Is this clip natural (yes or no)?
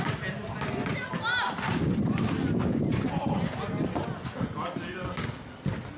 yes